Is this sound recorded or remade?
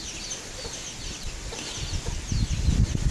recorded